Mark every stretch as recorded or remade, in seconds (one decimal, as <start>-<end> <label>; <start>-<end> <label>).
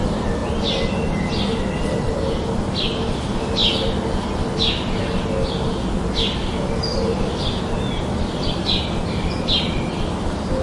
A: 0.0-10.6 recorded